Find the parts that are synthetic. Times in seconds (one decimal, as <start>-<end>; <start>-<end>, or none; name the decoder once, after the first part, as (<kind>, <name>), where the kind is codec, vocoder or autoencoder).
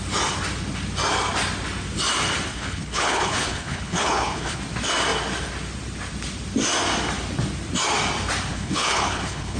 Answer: 2.5-4.6 (codec, HILCodec); 8.5-9.6